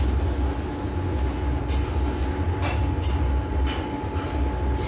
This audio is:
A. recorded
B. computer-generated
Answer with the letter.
A